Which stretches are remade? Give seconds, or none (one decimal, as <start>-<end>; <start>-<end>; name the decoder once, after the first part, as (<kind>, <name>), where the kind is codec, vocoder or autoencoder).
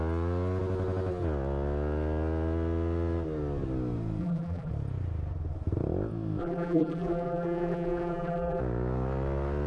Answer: 4.2-4.7 (vocoder, BigVGAN v2); 6.4-8.6